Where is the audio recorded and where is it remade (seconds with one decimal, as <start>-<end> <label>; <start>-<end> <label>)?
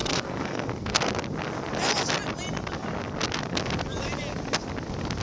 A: 0.0-1.0 remade; 1.0-5.2 recorded